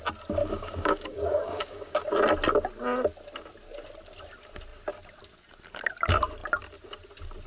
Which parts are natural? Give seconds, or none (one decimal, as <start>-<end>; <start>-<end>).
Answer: 0.0-0.4; 2.1-7.5